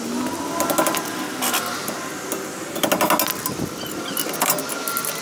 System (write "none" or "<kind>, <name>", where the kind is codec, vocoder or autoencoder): none